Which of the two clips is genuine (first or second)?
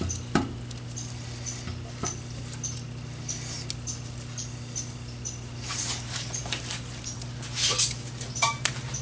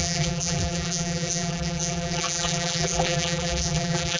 first